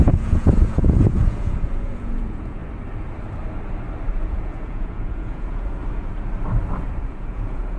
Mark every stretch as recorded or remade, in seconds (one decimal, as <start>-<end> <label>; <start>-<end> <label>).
0.0-2.6 remade; 2.6-4.1 recorded; 4.1-5.8 remade; 5.8-7.0 recorded; 7.0-7.8 remade